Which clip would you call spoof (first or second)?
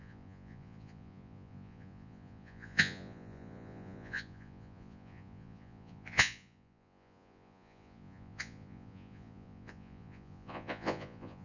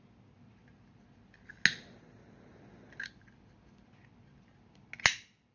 first